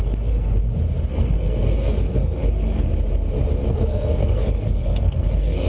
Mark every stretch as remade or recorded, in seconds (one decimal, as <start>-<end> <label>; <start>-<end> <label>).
0.0-0.6 remade; 0.6-1.1 recorded; 1.1-2.9 remade; 2.9-3.7 recorded; 3.7-5.7 remade